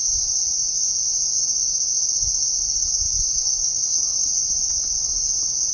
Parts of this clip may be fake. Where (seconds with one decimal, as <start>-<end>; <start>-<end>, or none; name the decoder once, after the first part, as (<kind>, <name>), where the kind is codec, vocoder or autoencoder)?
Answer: 3.3-4.0 (codec, SNAC)